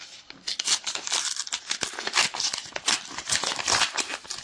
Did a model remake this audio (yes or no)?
no